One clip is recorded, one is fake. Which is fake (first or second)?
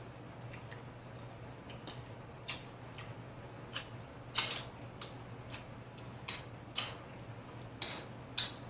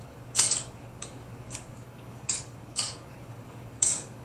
second